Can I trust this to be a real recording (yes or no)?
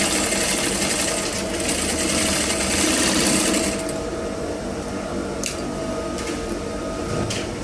yes